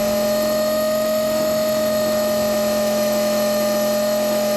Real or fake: fake